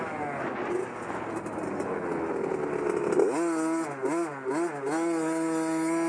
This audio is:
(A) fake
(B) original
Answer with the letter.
B